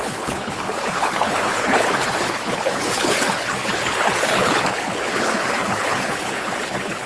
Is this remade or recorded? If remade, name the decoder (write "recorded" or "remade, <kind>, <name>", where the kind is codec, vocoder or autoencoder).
remade, codec, HILCodec